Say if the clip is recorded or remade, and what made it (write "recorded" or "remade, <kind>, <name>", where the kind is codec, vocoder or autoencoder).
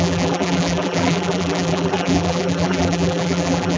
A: remade, vocoder, BigVGAN v2